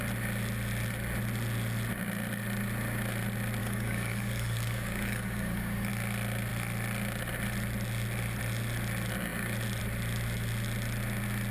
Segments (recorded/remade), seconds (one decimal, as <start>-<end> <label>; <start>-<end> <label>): 0.0-3.6 recorded; 3.6-5.9 remade; 5.9-11.5 recorded